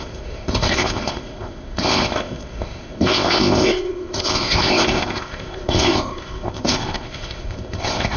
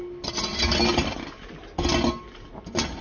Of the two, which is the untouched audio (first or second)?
second